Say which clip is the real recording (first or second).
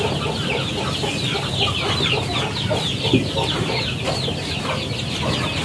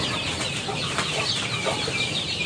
first